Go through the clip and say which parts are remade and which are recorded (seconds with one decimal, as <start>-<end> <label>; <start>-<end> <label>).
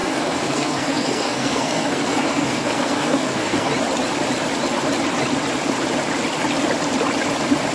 0.0-3.7 remade; 3.7-7.7 recorded